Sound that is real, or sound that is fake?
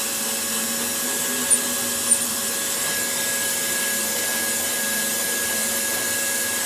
real